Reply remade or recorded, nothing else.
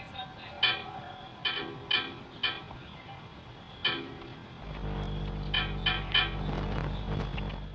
recorded